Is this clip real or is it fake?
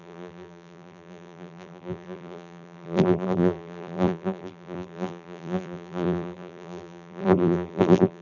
fake